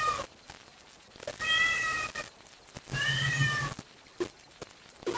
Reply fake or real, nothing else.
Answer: real